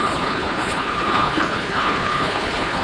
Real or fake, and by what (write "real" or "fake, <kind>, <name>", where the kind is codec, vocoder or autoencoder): fake, codec, HILCodec